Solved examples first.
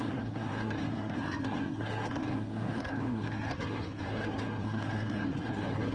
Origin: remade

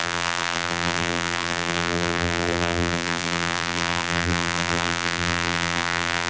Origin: remade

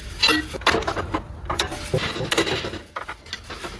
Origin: recorded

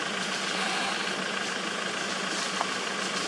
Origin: recorded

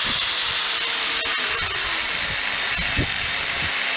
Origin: remade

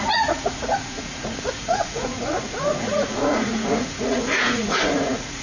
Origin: remade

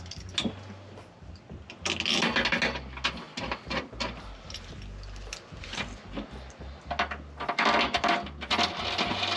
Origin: recorded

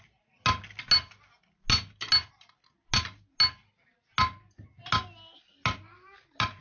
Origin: recorded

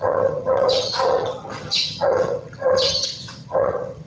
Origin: remade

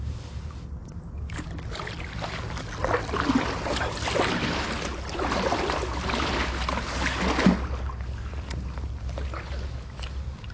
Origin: recorded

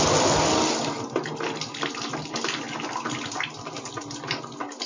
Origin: recorded